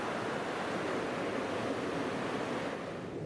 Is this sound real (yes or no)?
yes